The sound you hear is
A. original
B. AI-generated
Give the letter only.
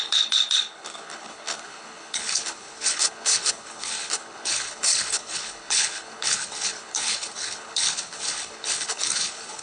B